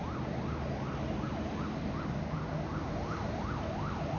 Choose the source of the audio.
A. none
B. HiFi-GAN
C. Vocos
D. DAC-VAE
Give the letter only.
A